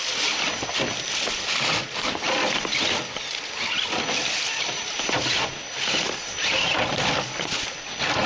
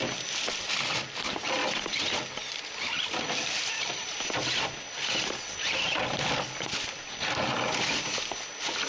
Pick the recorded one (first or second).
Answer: second